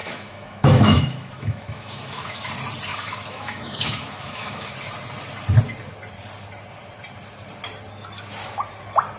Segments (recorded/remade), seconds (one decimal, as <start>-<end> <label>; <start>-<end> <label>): 0.0-2.5 remade; 2.5-2.9 recorded; 2.9-4.7 remade; 4.7-9.2 recorded